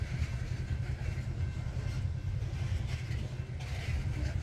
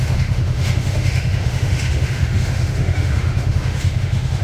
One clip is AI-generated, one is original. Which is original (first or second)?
first